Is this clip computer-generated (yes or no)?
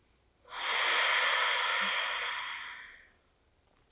no